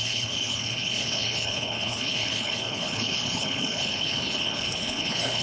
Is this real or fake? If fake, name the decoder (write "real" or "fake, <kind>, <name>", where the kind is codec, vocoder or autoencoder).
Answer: fake, codec, HILCodec